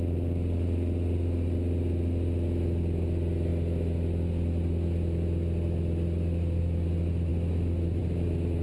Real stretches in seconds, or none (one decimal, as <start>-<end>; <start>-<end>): 0.0-8.6